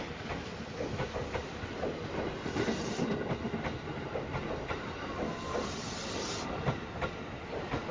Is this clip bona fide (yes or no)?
yes